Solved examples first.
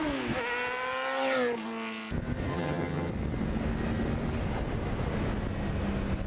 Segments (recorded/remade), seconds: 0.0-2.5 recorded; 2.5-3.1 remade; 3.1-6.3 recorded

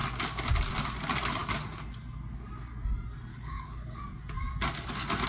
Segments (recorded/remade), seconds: 0.0-3.3 recorded; 3.3-4.0 remade; 4.0-5.3 recorded

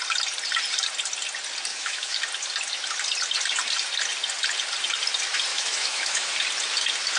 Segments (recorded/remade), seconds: 0.0-1.7 recorded; 1.7-2.2 remade; 2.2-5.5 recorded; 5.5-6.3 remade; 6.3-7.2 recorded

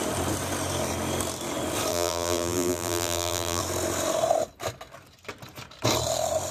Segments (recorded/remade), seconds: 0.0-1.9 recorded; 1.9-3.6 remade; 3.6-6.5 recorded